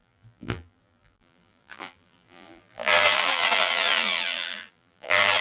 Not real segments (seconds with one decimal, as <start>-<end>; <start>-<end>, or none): 0.0-5.4